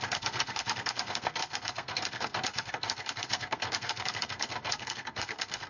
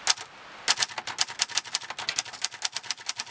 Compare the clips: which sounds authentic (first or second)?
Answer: second